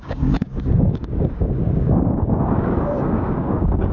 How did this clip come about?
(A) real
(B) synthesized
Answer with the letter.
B